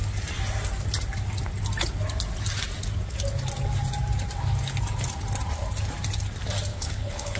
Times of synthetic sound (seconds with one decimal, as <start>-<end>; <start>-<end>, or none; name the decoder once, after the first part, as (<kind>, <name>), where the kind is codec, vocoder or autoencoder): 6.7-7.4 (codec, HILCodec)

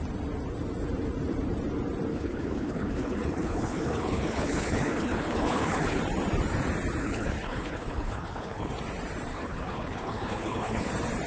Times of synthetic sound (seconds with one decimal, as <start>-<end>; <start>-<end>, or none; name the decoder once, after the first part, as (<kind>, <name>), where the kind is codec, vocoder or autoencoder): 2.1-6.0 (codec, HILCodec); 7.0-8.7; 9.3-10.9

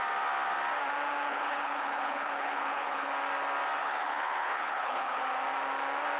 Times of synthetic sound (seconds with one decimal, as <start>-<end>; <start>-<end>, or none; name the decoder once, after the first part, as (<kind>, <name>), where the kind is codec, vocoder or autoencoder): 1.3-3.1 (codec, HILCodec); 3.8-5.2

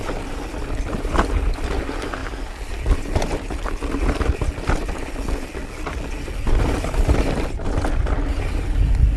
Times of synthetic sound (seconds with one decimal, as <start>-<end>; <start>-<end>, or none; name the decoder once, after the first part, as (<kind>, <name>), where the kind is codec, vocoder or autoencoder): none